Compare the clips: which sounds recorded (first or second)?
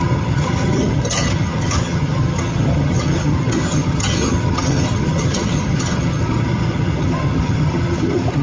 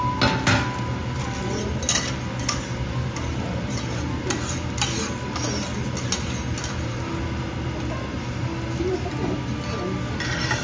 second